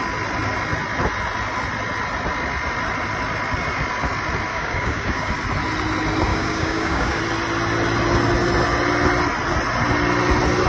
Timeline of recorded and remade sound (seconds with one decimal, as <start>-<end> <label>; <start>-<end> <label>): 0.0-4.5 recorded; 4.5-5.3 remade; 5.3-6.3 recorded; 6.3-7.2 remade; 7.2-10.7 recorded